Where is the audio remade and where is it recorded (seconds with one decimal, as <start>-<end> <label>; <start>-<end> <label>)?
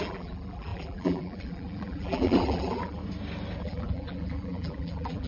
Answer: 0.0-3.0 remade; 3.0-3.6 recorded; 3.6-5.3 remade